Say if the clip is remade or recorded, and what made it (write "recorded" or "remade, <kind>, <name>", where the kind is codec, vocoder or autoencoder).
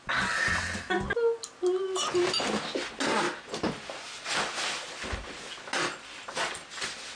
recorded